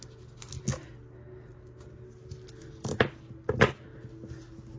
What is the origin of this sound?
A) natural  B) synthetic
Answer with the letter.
A